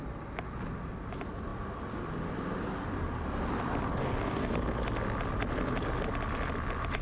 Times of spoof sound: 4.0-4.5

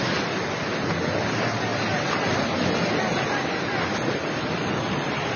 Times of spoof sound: none